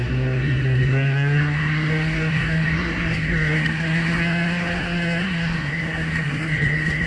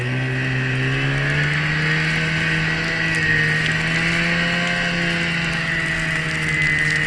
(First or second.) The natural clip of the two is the second